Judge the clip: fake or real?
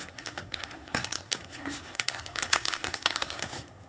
fake